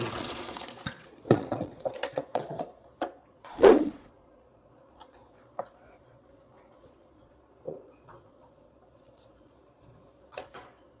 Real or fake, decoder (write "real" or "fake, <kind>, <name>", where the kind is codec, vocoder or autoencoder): fake, vocoder, Vocos